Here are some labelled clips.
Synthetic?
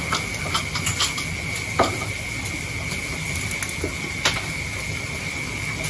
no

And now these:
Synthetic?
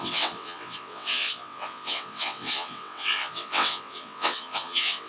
yes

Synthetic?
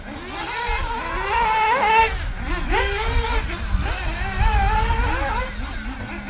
no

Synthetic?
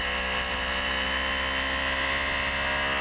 no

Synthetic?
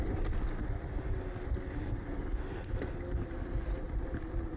no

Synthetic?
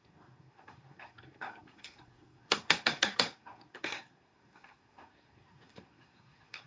yes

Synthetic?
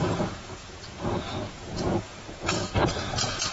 yes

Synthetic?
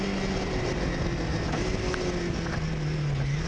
no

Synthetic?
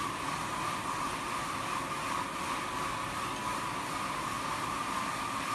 no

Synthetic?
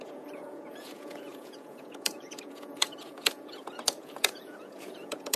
yes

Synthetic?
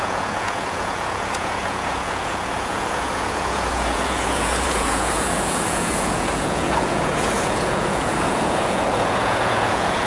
yes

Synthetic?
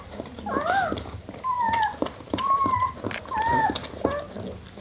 no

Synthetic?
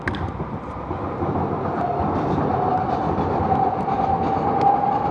no